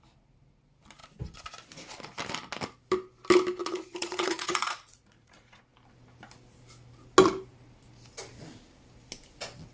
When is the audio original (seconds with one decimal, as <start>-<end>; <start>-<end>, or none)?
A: 0.0-3.6; 5.6-9.7